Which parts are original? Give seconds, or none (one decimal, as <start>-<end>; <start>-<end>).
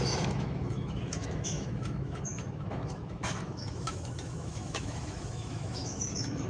none